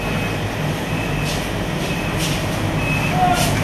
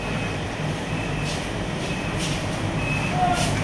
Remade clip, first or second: second